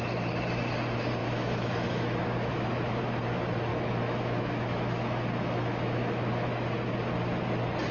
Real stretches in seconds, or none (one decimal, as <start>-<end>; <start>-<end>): 0.0-1.2; 3.0-3.7; 6.5-7.9